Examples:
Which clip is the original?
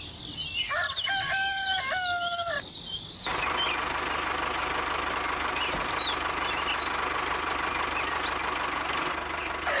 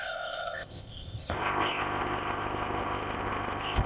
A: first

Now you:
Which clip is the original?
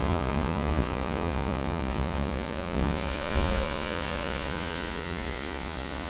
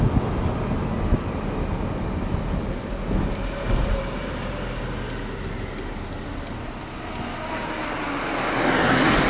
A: second